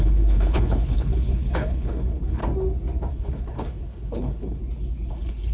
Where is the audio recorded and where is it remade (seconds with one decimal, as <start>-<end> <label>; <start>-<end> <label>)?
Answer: 0.0-2.4 remade; 2.4-3.1 recorded; 3.1-4.6 remade; 4.6-5.1 recorded; 5.1-5.5 remade